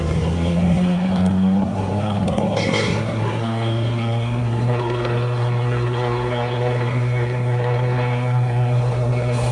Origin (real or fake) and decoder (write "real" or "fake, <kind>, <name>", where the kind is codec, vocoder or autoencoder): fake, codec, SNAC